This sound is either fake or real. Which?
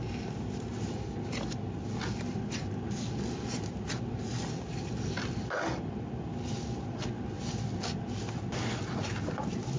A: real